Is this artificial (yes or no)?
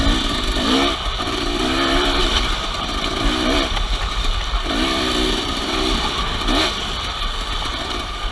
yes